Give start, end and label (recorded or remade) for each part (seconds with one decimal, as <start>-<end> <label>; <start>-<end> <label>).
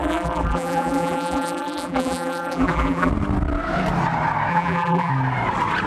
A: 0.0-3.1 remade; 3.1-4.5 recorded; 4.5-5.1 remade; 5.1-5.9 recorded